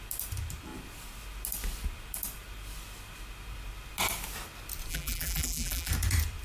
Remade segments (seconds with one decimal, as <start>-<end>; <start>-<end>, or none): 4.9-5.9